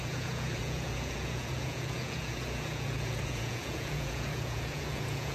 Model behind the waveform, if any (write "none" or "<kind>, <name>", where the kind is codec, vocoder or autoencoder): vocoder, Vocos